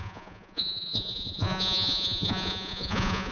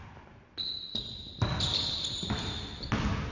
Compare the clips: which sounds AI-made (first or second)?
first